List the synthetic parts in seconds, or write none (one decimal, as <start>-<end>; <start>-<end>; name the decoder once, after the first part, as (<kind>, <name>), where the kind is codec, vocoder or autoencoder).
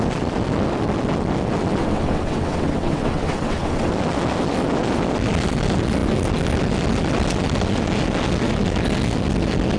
1.8-3.9 (vocoder, WaveNeXt)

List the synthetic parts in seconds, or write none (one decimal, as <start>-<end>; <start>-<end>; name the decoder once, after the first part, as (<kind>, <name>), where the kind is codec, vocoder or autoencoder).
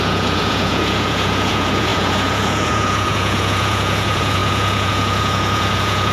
0.0-6.1 (vocoder, Vocos)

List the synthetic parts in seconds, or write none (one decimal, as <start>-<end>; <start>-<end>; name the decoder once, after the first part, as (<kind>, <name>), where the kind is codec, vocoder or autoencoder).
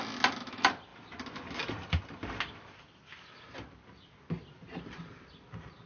none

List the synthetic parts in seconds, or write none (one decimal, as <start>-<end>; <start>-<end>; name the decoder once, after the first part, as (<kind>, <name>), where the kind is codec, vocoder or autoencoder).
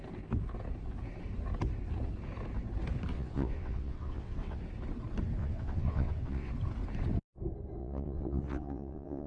3.1-4.6 (vocoder, WaveNeXt); 5.4-6.5; 7.8-9.3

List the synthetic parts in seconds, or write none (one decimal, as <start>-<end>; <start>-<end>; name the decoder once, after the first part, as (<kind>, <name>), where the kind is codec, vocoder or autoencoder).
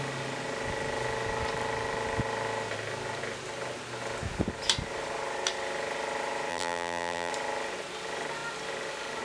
6.5-7.3 (vocoder, BigVGAN v2)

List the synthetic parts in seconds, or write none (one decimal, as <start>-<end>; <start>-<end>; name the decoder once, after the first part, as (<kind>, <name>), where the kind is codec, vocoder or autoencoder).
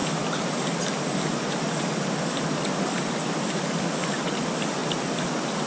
none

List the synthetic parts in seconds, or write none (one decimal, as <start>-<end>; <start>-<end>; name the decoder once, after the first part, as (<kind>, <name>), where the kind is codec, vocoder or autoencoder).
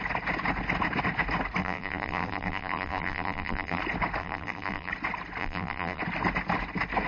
1.6-3.8 (vocoder, BigVGAN v2); 4.2-4.9; 5.4-6.0